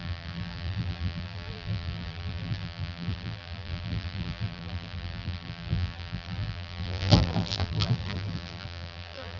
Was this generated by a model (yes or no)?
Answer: yes